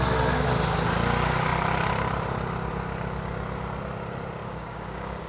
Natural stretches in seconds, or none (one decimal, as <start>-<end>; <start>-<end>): 0.0-4.4